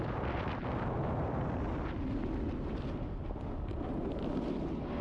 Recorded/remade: recorded